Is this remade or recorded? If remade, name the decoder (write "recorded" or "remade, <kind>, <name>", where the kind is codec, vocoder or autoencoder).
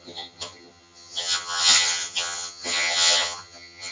remade, vocoder, HiFi-GAN